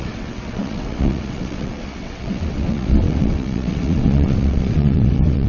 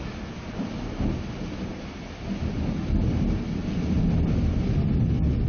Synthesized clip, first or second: first